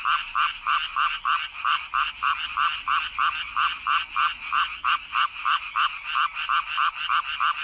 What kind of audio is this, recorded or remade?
recorded